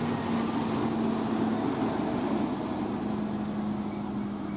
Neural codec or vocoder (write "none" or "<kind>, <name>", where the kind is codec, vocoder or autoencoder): none